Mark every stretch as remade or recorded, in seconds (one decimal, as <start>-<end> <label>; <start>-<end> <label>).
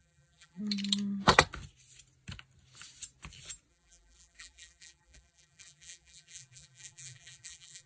0.0-0.6 remade; 0.6-3.7 recorded; 3.7-7.9 remade